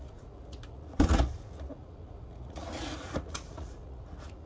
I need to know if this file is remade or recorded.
remade